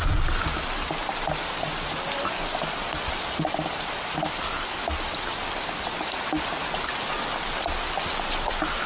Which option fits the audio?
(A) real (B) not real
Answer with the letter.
A